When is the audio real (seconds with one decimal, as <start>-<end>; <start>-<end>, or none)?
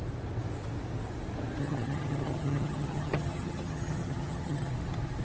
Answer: 0.0-1.6; 4.7-5.2